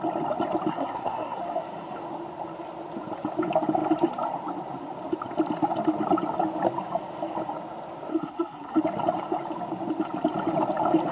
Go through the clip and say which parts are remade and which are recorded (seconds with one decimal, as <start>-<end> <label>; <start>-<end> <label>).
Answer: 0.0-0.7 recorded; 0.7-1.4 remade; 1.4-8.1 recorded; 8.1-8.8 remade; 8.8-11.1 recorded